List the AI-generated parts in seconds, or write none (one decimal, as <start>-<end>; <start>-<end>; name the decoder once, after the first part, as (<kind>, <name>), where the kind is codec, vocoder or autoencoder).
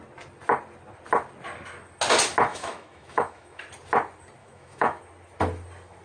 2.5-3.6 (autoencoder, DAC-VAE); 4.4-5.0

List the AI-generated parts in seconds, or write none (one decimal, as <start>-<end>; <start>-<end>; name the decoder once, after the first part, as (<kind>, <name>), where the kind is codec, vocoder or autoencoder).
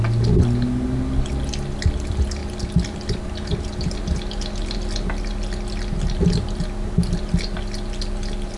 none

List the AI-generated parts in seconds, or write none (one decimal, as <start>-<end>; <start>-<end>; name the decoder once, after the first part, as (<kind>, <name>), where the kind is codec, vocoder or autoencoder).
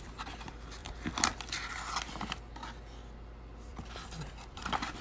0.8-1.7 (vocoder, BigVGAN v2); 3.7-4.6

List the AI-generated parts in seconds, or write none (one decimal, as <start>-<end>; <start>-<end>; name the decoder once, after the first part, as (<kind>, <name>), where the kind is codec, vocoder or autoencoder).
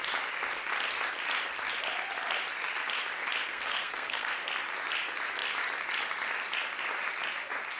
3.5-4.4 (codec, SNAC)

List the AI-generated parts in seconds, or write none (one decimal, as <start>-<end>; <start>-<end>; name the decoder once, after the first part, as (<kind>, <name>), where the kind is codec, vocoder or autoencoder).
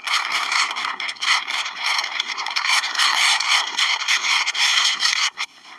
0.0-5.8 (codec, SNAC)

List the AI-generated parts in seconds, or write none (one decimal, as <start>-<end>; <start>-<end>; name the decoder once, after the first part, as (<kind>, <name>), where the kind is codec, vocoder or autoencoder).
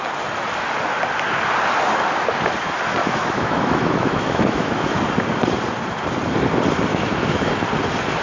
3.0-5.0 (autoencoder, DAC-VAE); 6.9-7.5